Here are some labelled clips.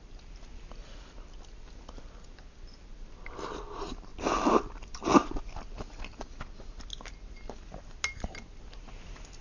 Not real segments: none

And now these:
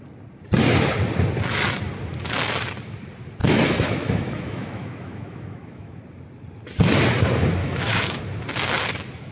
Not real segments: 3.4-6.0 (autoencoder, DAC-VAE); 7.6-8.2

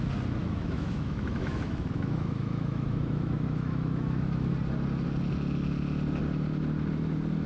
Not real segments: 0.4-4.5 (autoencoder, DAC-VAE)

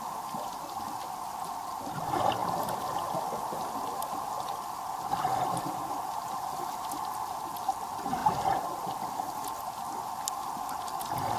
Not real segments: none

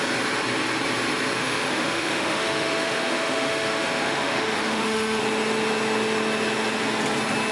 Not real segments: 1.4-5.2 (autoencoder, DAC-VAE)

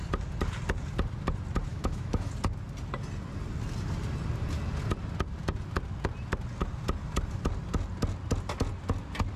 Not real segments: 1.7-2.3 (autoencoder, DAC-VAE)